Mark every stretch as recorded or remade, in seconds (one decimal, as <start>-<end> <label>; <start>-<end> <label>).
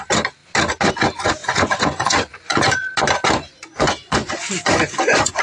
0.0-1.4 recorded; 1.4-2.9 remade; 2.9-3.5 recorded; 3.5-5.4 remade